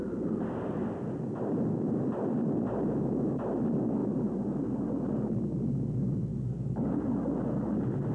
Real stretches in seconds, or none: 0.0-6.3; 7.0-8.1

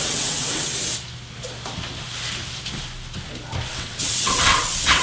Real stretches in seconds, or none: 0.7-3.7

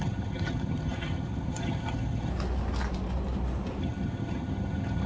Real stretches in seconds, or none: 2.3-3.8